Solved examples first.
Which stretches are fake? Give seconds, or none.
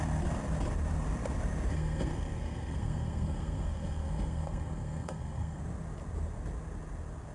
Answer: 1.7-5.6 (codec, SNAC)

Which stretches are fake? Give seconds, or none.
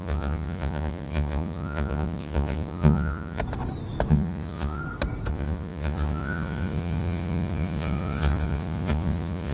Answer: 0.0-3.4 (vocoder, Vocos); 4.1-4.8; 5.3-9.5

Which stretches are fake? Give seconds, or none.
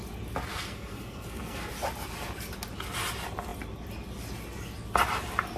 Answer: 0.5-1.7 (codec, SNAC)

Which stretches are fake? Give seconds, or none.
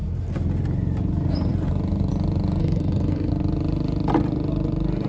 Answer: 2.6-3.3 (codec, SNAC)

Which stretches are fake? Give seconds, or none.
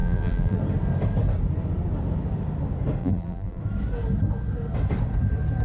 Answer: 0.0-0.6 (vocoder, BigVGAN v2); 3.0-3.6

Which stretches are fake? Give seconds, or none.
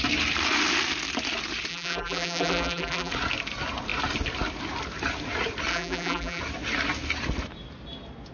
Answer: 1.7-3.1 (vocoder, BigVGAN v2); 5.7-6.4